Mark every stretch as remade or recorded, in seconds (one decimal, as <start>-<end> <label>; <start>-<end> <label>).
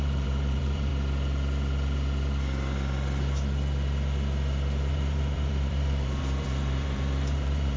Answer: 0.0-0.9 remade; 0.9-4.9 recorded; 4.9-7.8 remade